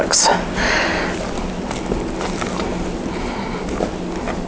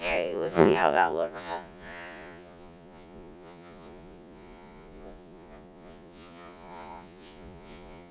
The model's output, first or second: second